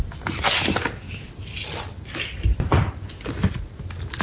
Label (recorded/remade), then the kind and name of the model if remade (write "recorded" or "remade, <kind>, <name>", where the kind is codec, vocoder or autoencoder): recorded